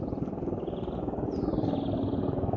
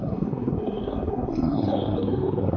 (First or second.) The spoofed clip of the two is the second